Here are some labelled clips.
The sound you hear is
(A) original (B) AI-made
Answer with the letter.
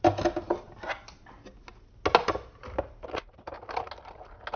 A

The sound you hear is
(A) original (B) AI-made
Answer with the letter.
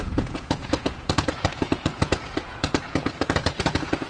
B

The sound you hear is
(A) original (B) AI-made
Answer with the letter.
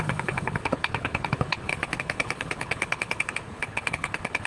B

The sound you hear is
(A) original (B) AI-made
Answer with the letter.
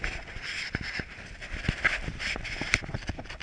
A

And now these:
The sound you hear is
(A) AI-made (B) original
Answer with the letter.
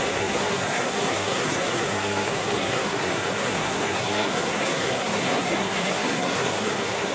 A